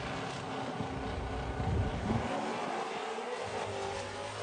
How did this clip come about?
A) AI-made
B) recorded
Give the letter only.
B